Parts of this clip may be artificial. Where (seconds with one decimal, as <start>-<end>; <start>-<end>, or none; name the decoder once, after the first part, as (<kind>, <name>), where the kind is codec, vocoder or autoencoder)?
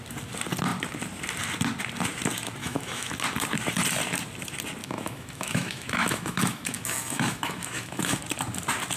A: 2.6-3.1 (autoencoder, DAC-VAE); 4.8-8.2